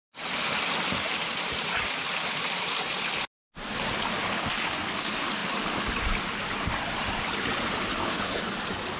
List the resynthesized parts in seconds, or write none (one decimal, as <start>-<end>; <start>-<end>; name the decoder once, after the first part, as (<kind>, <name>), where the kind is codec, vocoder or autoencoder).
8.0-8.5 (codec, HILCodec)